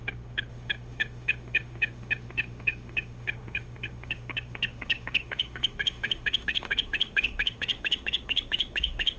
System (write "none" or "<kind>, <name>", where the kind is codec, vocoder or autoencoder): autoencoder, DAC-VAE